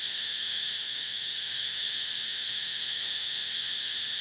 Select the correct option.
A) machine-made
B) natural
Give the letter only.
A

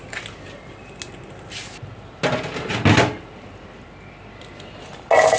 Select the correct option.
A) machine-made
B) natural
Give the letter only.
B